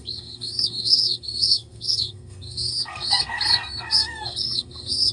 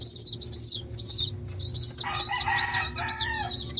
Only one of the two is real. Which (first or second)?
second